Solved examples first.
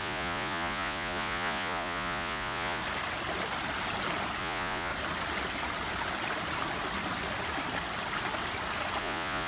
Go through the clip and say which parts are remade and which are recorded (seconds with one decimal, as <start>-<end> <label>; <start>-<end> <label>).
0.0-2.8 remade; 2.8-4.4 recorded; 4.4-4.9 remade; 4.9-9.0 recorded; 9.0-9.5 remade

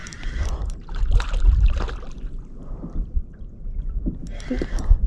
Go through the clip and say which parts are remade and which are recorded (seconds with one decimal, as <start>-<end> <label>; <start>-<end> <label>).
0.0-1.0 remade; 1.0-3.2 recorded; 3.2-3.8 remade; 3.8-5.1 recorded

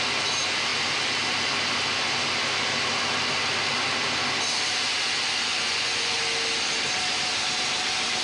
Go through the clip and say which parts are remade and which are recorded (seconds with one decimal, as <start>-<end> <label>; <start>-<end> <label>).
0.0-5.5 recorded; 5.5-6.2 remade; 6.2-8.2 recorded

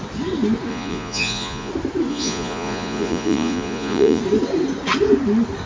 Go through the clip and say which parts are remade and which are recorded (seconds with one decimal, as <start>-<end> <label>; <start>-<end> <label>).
0.0-0.7 recorded; 0.7-1.7 remade; 1.7-2.1 recorded; 2.1-4.2 remade; 4.2-5.7 recorded

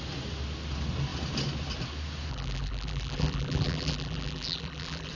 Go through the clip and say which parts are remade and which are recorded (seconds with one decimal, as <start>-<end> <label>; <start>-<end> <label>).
0.0-2.3 recorded; 2.3-5.1 remade